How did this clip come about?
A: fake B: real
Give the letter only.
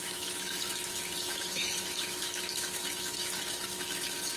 A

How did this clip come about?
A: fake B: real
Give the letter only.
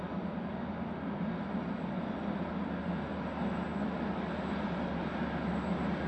B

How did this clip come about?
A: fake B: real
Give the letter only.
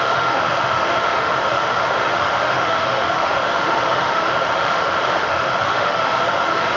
A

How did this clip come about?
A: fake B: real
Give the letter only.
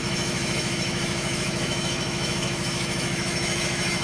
A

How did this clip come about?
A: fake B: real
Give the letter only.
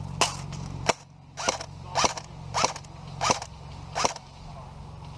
B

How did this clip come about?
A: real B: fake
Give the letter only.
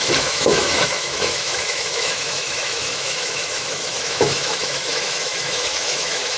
B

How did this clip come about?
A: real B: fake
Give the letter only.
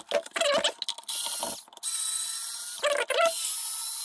A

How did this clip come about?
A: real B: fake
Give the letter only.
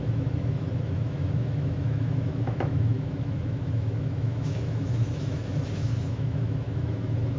B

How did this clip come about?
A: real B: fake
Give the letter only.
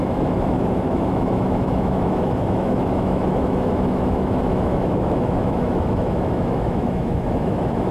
B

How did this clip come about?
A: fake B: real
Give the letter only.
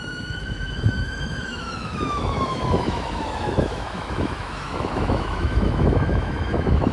A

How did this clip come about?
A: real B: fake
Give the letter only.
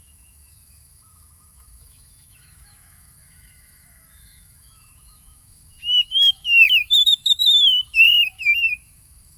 B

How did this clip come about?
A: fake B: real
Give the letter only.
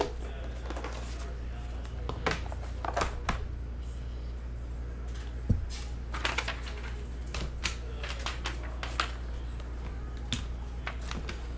B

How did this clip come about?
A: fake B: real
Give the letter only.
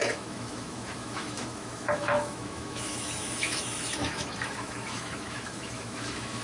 A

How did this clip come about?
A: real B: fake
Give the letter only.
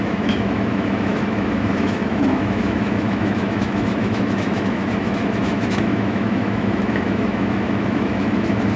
B